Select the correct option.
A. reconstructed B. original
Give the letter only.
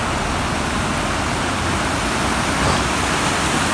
B